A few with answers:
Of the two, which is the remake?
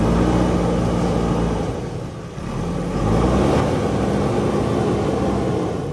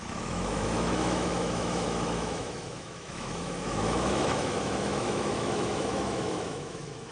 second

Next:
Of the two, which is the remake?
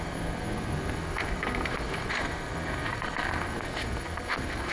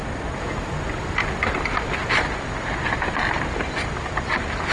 first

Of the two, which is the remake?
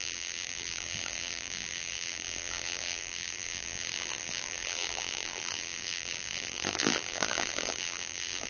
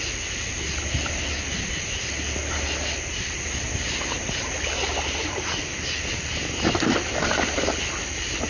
first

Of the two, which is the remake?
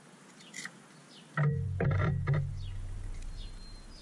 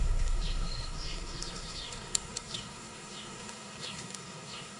second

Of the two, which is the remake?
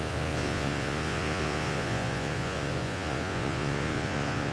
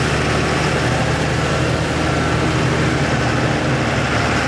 first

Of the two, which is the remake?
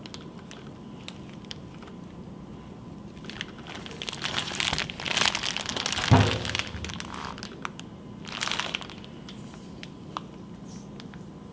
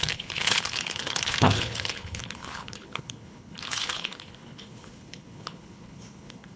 second